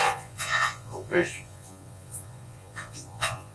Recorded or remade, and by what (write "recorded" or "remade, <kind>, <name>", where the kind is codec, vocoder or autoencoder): remade, vocoder, Vocos